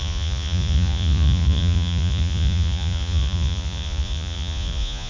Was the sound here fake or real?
fake